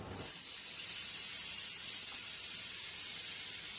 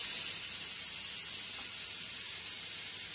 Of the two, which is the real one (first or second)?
second